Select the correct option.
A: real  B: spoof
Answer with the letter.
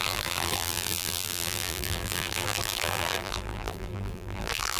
B